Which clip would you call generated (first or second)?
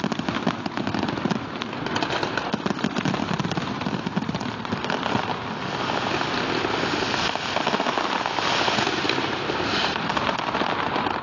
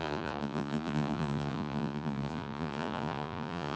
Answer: second